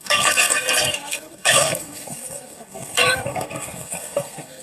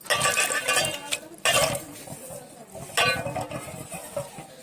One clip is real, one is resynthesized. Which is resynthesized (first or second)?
first